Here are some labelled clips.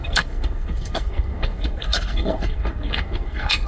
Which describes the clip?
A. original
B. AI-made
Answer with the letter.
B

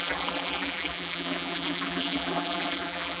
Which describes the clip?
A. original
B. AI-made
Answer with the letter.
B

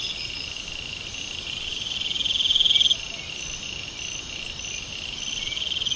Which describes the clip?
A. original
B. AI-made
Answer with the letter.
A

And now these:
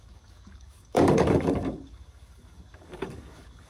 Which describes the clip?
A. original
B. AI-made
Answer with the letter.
B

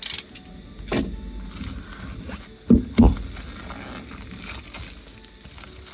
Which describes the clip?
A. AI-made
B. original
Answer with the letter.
B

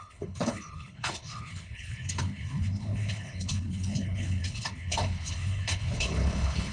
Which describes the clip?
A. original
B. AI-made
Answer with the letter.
B